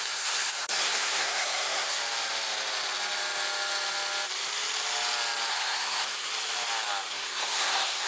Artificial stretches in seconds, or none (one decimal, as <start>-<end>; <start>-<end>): 0.0-2.0; 5.5-6.3; 7.1-8.1